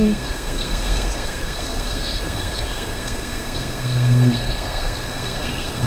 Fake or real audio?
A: fake